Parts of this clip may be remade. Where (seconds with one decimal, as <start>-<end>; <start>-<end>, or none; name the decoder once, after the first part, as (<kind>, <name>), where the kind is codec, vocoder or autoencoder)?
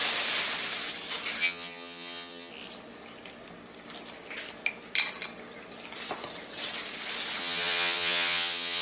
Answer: 1.4-2.5 (vocoder, HiFi-GAN); 7.4-8.8